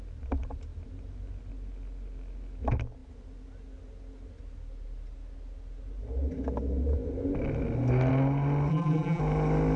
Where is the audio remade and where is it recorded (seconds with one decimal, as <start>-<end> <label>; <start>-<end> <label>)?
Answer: 0.0-8.7 recorded; 8.7-9.2 remade; 9.2-9.8 recorded